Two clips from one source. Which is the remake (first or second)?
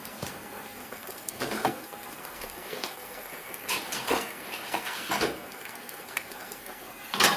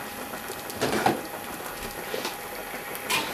first